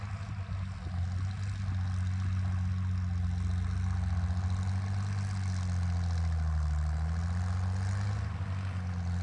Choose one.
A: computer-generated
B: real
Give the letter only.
B